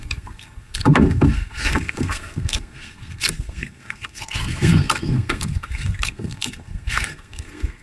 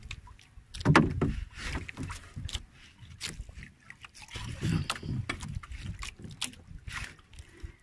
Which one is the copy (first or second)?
first